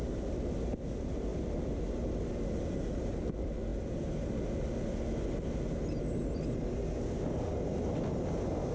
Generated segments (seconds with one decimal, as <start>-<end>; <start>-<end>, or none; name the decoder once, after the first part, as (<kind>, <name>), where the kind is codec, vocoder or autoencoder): none